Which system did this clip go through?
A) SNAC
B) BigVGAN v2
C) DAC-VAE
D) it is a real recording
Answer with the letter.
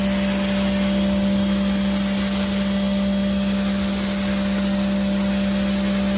D